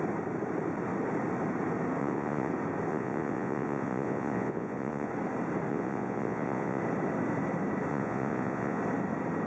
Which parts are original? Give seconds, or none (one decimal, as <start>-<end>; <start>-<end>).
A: 0.0-2.0; 2.5-2.9; 5.1-5.7; 6.8-7.9; 8.8-9.5